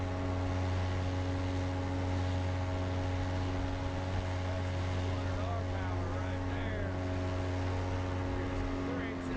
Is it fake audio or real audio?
real